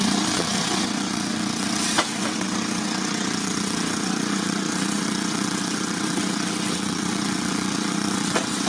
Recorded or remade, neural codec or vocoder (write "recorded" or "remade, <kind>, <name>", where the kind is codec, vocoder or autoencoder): remade, vocoder, WaveNeXt